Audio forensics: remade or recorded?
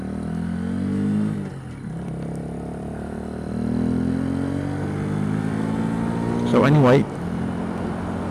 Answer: recorded